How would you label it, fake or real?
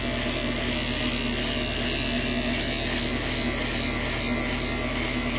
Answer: real